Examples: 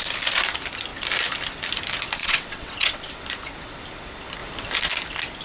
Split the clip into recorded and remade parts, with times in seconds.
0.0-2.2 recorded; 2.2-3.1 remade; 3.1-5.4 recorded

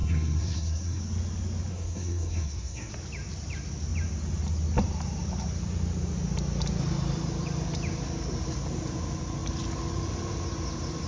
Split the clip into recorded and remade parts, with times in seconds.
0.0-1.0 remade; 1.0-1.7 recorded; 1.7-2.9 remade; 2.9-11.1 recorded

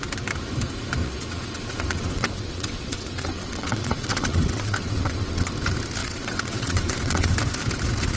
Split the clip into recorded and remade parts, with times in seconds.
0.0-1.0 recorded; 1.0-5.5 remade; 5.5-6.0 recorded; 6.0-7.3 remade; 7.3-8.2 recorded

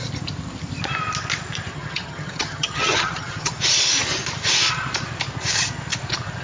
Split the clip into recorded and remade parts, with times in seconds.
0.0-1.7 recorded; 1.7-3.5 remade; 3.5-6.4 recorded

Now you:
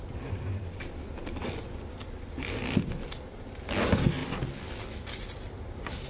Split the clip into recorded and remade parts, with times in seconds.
0.0-6.1 recorded

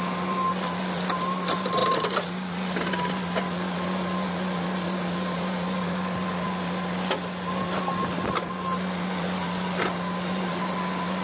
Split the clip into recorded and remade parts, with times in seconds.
0.0-11.2 recorded